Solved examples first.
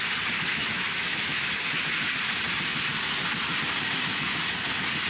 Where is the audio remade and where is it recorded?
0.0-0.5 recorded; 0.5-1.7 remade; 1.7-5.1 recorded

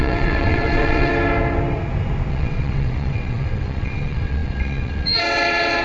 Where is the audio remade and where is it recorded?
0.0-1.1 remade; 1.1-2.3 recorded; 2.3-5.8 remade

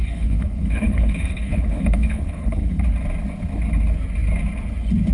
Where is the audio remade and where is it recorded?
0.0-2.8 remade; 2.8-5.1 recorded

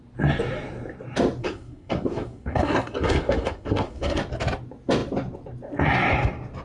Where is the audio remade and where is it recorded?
0.0-1.4 recorded; 1.4-4.2 remade; 4.2-6.6 recorded